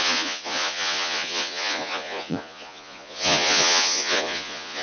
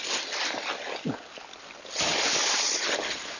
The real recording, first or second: second